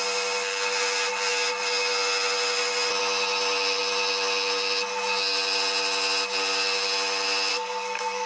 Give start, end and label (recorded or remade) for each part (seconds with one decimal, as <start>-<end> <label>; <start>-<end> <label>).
0.0-7.5 recorded; 7.5-8.3 remade